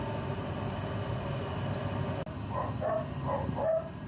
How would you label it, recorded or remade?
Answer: recorded